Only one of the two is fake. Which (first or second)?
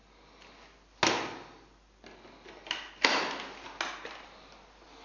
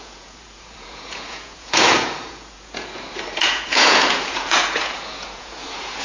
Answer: second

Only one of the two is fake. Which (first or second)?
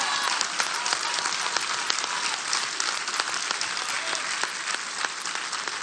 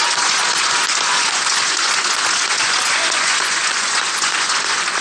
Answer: second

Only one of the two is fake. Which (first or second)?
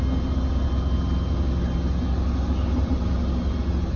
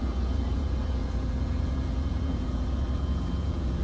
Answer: second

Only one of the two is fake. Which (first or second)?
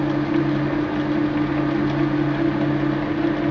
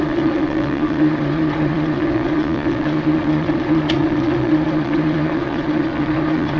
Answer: second